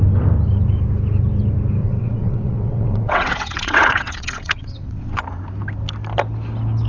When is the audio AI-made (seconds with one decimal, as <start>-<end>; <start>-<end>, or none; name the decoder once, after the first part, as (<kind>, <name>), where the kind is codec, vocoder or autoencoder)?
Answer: 1.8-5.2 (vocoder, WaveNeXt)